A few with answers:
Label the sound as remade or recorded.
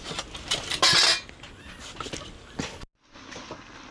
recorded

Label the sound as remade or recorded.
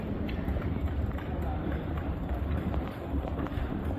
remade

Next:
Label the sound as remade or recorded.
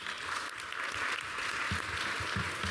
recorded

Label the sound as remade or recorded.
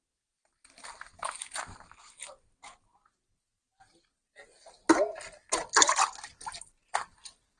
recorded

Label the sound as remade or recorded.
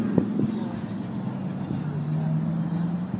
recorded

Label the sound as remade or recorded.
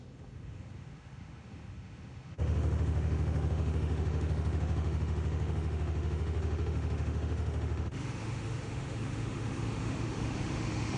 remade